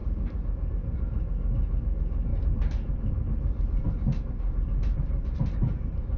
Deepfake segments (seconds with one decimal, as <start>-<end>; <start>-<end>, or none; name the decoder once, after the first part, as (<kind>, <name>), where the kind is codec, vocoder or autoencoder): 0.0-0.7 (vocoder, BigVGAN v2); 2.3-6.2